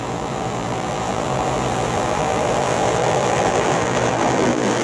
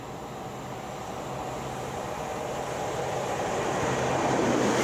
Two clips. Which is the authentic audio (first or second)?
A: second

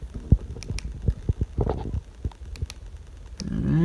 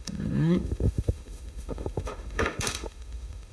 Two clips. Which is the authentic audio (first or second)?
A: first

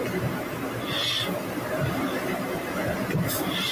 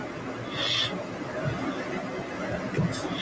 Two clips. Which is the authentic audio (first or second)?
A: second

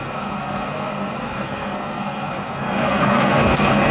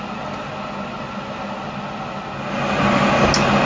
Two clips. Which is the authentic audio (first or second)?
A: second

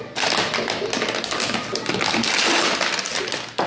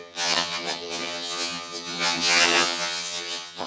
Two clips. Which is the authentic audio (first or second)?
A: first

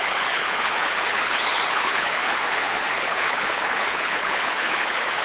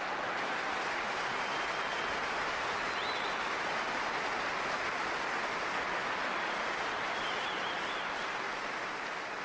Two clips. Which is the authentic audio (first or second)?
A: second